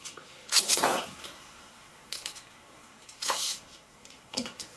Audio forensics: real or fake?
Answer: fake